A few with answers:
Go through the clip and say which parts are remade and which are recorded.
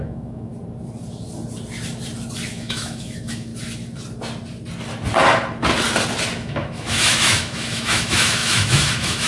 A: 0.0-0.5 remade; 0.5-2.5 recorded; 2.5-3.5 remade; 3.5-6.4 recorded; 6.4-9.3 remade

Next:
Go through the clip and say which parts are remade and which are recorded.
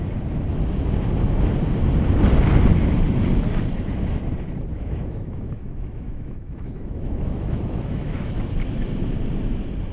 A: 0.0-4.7 recorded; 4.7-8.3 remade; 8.3-9.9 recorded